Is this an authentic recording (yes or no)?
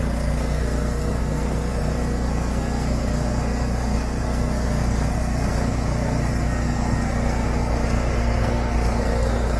no